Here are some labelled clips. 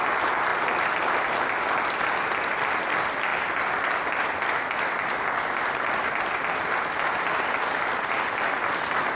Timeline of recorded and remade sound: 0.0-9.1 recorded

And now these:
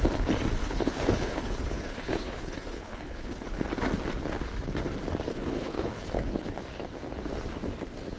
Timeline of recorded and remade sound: 0.0-0.6 recorded; 0.6-3.4 remade; 3.4-5.3 recorded; 5.3-6.6 remade; 6.6-8.2 recorded